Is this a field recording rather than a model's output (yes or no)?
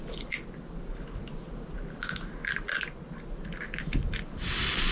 yes